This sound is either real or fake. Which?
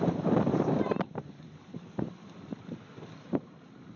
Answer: fake